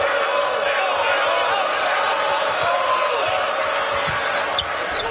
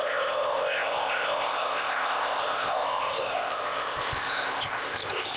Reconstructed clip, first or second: second